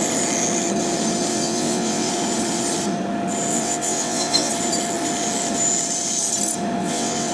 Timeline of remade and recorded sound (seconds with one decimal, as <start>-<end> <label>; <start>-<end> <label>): 0.0-1.3 recorded; 1.3-2.1 remade; 2.1-3.5 recorded; 3.5-4.5 remade; 4.5-6.8 recorded; 6.8-7.3 remade

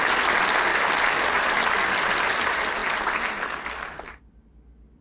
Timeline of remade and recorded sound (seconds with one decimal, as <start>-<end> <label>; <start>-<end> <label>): 0.0-5.0 recorded

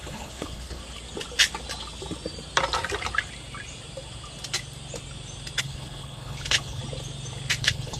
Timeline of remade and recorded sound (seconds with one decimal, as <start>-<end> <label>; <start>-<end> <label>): 0.0-0.8 remade; 0.8-5.6 recorded; 5.6-6.8 remade; 6.8-7.6 recorded; 7.6-8.0 remade

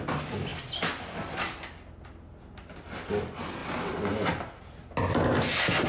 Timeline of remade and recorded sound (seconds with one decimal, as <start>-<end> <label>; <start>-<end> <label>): 0.0-5.9 recorded

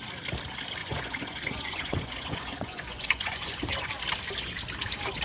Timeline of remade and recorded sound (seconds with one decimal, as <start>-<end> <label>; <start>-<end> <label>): 0.0-0.8 recorded; 0.8-3.9 remade; 3.9-5.2 recorded